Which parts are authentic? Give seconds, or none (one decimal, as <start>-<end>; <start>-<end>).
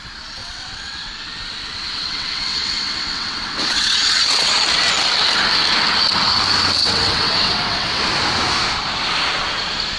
0.0-0.4; 4.5-6.8; 8.0-10.0